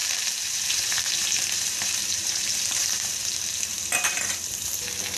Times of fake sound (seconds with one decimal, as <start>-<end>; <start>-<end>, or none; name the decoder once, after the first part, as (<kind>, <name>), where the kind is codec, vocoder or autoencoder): 0.0-3.1 (vocoder, BigVGAN v2); 3.7-4.2